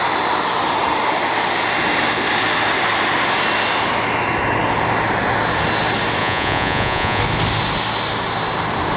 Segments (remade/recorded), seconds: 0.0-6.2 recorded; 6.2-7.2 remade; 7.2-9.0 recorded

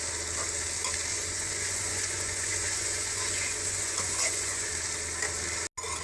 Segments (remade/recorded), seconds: 0.0-1.1 recorded; 1.1-4.7 remade; 4.7-6.0 recorded

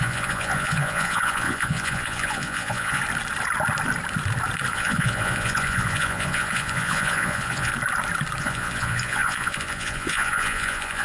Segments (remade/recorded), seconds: 0.0-3.0 remade; 3.0-4.7 recorded; 4.7-7.7 remade; 7.7-8.4 recorded; 8.4-11.0 remade

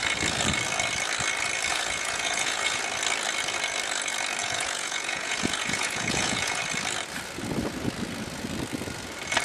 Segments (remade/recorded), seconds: 0.0-1.7 recorded; 1.7-2.8 remade; 2.8-4.4 recorded; 4.4-6.6 remade; 6.6-9.4 recorded

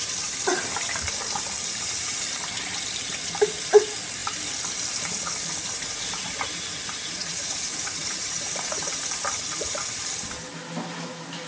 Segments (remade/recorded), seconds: 0.0-7.2 recorded; 7.2-9.2 remade; 9.2-11.5 recorded

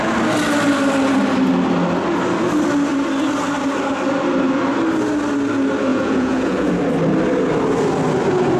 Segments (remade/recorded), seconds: 0.0-5.9 recorded; 5.9-6.7 remade; 6.7-8.6 recorded